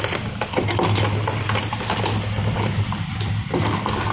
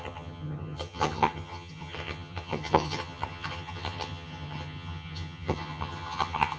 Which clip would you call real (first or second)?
first